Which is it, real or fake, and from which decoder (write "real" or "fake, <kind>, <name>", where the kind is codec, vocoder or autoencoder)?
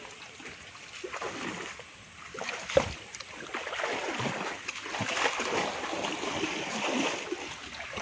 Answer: real